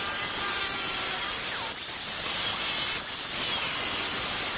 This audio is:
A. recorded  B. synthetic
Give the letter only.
A